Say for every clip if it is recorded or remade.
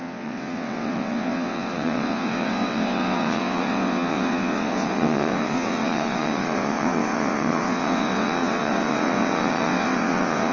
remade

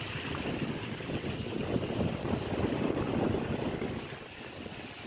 recorded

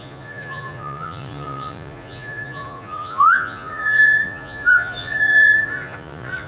remade